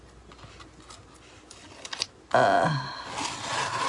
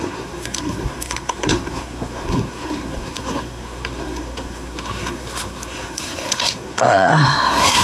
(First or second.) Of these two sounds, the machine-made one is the second